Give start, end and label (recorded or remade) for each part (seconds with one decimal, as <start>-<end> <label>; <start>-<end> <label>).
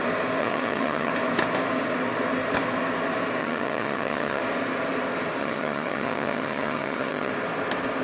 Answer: 0.0-0.4 recorded; 0.4-1.1 remade; 1.1-3.4 recorded; 3.4-4.4 remade; 4.4-5.4 recorded; 5.4-7.3 remade; 7.3-8.0 recorded